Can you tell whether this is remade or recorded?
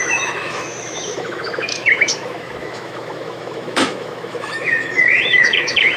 remade